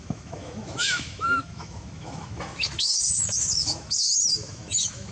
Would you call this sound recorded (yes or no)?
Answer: no